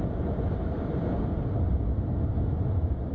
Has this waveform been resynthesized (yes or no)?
no